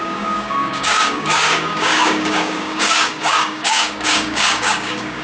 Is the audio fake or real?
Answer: fake